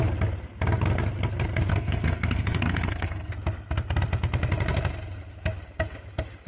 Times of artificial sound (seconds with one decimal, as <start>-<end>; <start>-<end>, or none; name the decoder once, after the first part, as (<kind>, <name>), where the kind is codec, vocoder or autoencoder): 1.7-3.3 (codec, SNAC)